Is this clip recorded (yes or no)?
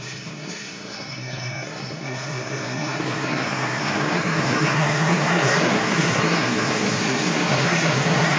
no